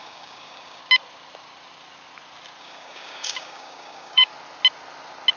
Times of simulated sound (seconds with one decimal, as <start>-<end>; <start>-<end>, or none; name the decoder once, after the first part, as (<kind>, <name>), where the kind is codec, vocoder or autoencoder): 0.0-0.8 (codec, DAC); 2.6-4.3